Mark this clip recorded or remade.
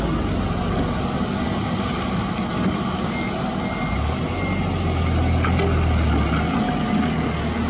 recorded